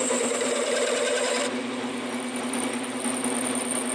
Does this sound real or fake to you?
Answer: real